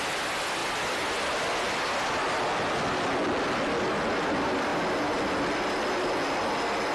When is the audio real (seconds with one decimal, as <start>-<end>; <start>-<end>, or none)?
0.6-4.1; 4.7-6.9